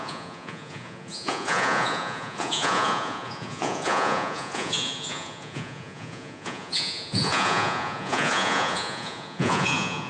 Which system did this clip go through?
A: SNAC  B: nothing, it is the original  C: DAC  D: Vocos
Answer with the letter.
D